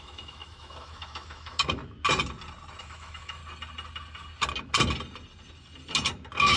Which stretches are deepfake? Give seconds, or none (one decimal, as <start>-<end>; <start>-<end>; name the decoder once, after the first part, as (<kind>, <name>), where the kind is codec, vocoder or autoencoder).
0.0-1.8 (autoencoder, DAC-VAE); 2.8-3.4